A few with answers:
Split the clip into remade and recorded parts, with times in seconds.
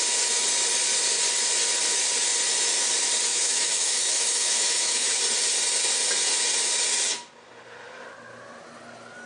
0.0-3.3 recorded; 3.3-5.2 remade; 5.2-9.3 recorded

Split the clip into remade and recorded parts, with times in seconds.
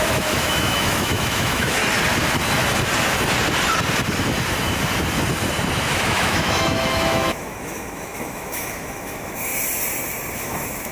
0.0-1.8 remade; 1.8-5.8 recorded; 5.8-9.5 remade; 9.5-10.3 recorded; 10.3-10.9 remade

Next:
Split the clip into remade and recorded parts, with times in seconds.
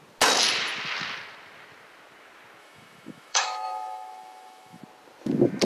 0.0-2.6 recorded; 2.6-4.8 remade; 4.8-5.6 recorded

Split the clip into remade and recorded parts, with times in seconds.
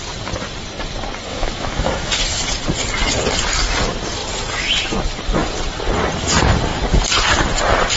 0.0-1.3 recorded; 1.3-2.2 remade; 2.2-8.0 recorded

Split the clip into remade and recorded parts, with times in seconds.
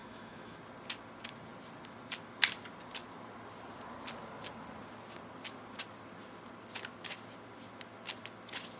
0.0-0.6 remade; 0.6-8.8 recorded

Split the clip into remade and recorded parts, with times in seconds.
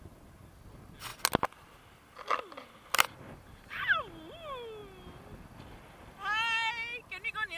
0.0-7.6 recorded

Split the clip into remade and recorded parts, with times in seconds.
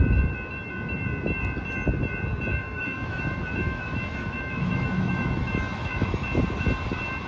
0.0-2.5 recorded; 2.5-3.2 remade; 3.2-3.6 recorded; 3.6-6.3 remade; 6.3-7.3 recorded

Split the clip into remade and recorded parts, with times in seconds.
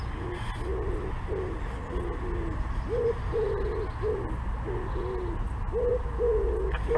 0.0-7.0 recorded